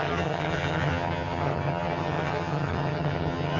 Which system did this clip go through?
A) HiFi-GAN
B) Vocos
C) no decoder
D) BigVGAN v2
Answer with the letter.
A